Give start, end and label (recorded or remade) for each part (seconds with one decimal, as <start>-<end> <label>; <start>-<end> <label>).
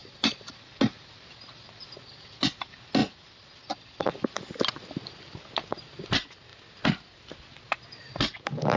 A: 0.0-0.7 remade; 0.7-8.8 recorded